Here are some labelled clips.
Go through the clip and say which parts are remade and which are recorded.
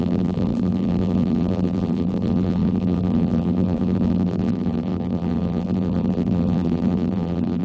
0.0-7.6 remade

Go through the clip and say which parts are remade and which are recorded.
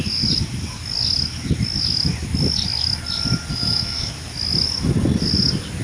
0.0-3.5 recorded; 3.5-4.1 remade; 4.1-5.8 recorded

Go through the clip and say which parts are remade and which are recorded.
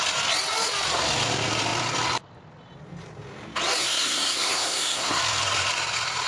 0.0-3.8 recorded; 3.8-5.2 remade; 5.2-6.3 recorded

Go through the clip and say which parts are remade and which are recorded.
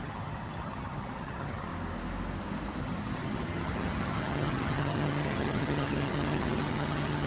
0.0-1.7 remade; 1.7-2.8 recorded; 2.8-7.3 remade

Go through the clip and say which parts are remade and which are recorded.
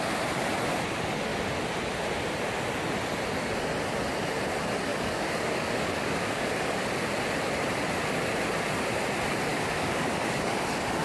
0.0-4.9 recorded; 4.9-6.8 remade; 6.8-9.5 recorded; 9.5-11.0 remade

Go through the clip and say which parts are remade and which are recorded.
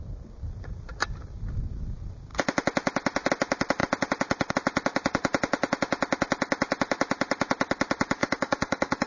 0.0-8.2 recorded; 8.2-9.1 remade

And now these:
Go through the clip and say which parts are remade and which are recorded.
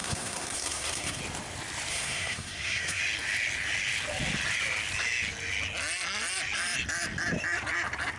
0.0-1.2 remade; 1.2-1.9 recorded; 1.9-3.0 remade; 3.0-8.2 recorded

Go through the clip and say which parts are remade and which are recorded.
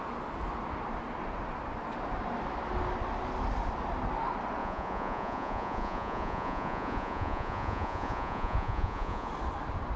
0.0-4.6 recorded; 4.6-9.3 remade; 9.3-10.0 recorded